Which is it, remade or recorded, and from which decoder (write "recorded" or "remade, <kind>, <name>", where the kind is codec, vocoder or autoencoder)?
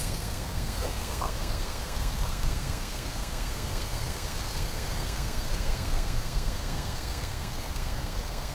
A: remade, codec, SNAC